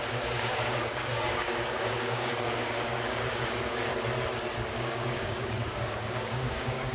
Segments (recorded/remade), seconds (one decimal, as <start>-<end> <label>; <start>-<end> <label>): 0.0-3.9 remade; 3.9-4.7 recorded; 4.7-6.9 remade